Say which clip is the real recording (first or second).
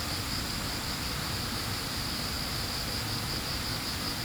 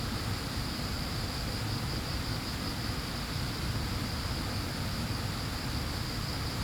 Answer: first